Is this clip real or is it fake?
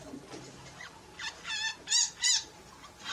real